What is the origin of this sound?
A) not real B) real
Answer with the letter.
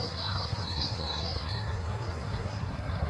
A